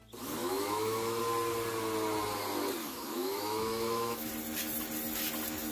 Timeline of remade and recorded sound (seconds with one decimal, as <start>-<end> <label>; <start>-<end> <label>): 0.0-0.4 recorded; 0.4-1.2 remade; 1.2-2.8 recorded; 2.8-4.3 remade; 4.3-5.7 recorded